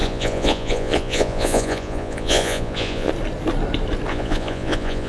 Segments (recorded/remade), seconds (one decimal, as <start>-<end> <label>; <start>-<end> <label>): 0.0-3.1 remade; 3.1-4.1 recorded; 4.1-5.1 remade